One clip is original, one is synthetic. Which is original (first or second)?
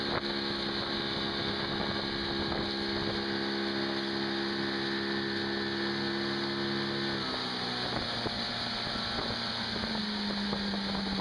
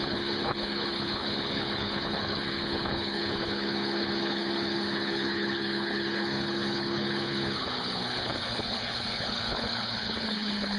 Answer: first